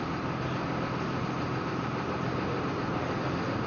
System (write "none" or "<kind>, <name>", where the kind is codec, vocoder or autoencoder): none